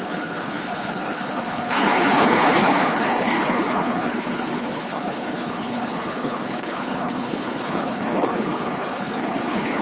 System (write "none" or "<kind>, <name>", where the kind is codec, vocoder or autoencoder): codec, HILCodec